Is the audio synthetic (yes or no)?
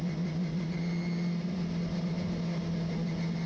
no